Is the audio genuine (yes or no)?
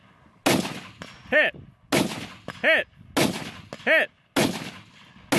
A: yes